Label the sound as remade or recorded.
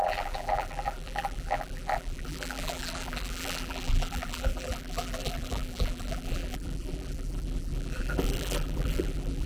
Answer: remade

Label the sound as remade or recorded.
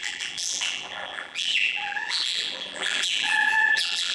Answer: remade